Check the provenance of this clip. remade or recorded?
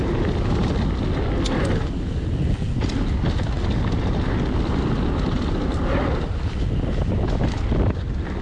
recorded